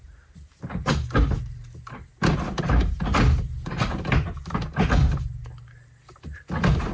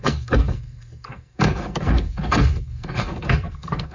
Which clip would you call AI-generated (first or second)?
second